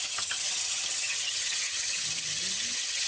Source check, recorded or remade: remade